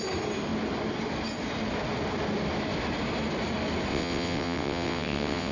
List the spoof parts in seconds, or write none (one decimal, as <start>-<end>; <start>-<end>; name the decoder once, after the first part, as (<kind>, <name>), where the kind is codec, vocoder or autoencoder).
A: 3.9-5.5 (vocoder, WaveNeXt)